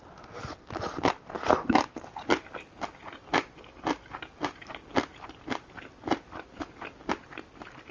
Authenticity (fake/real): real